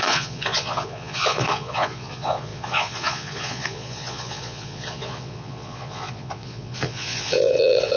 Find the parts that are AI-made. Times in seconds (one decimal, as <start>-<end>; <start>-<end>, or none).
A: 0.0-8.0